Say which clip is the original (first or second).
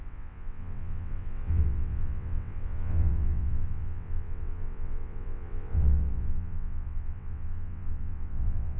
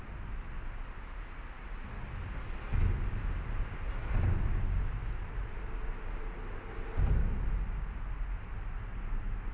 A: second